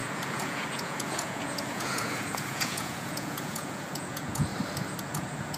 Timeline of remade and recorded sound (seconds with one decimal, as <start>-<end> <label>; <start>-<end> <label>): 0.0-4.5 remade; 4.5-5.0 recorded; 5.0-5.6 remade